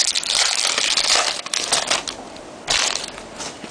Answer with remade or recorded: recorded